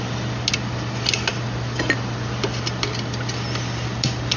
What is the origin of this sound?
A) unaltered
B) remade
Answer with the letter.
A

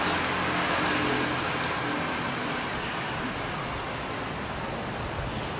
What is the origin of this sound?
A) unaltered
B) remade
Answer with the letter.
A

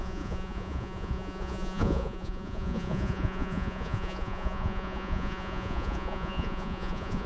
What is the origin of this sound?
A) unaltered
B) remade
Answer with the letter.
B